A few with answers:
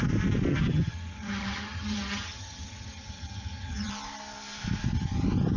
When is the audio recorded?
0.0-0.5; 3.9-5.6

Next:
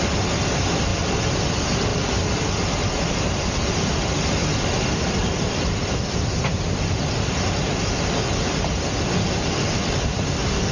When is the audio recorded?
none

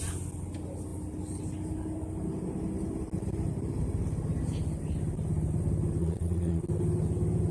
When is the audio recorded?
0.0-6.0; 6.6-7.5

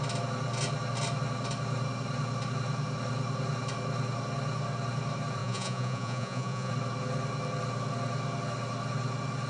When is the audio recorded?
0.0-5.4; 6.7-9.5

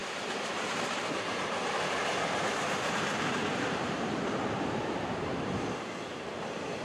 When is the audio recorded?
none